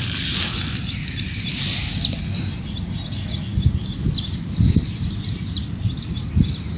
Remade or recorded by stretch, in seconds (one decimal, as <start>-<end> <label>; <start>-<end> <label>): 0.0-6.8 recorded